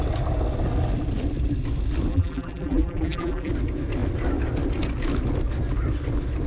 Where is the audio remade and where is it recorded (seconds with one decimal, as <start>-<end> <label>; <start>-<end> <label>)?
0.0-2.1 recorded; 2.1-3.5 remade; 3.5-6.5 recorded